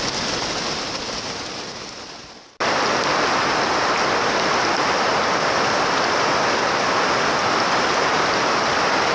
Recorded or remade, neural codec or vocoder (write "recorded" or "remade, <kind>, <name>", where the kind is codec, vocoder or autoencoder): recorded